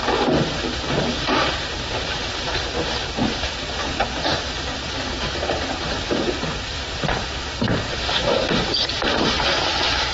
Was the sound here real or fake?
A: fake